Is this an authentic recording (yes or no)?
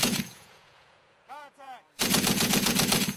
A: no